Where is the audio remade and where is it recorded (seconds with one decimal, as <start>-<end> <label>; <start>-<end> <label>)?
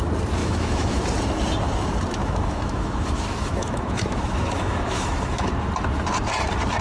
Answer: 0.0-0.4 recorded; 0.4-1.0 remade; 1.0-2.2 recorded; 2.2-5.5 remade; 5.5-6.8 recorded